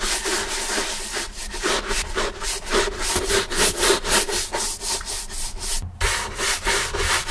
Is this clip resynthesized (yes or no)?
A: no